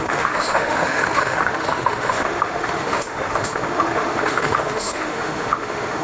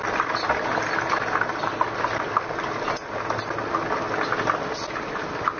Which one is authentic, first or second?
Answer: second